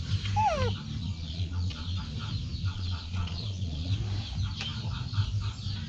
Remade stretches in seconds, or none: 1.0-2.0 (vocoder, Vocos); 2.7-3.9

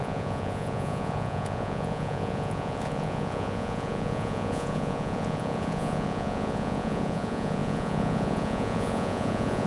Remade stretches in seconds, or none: 0.0-9.7 (vocoder, Vocos)

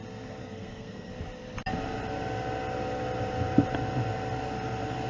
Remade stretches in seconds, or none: 0.4-1.1 (codec, SNAC)

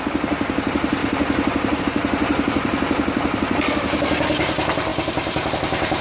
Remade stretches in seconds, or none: 0.0-1.0 (vocoder, BigVGAN v2); 1.8-6.0

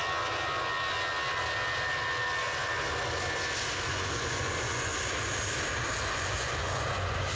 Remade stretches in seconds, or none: 3.9-4.9 (vocoder, Vocos); 6.1-7.4